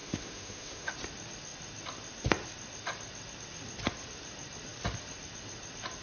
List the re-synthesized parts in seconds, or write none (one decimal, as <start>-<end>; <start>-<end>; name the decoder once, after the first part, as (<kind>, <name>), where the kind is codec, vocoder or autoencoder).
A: 0.0-0.9 (autoencoder, DAC-VAE)